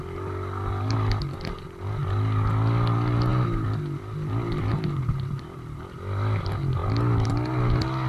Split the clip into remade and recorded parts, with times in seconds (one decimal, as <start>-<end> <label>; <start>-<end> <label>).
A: 0.0-8.1 recorded